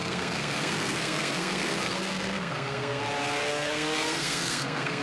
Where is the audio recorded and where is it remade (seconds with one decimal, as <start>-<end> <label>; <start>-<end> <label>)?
0.0-3.0 remade; 3.0-3.5 recorded; 3.5-5.0 remade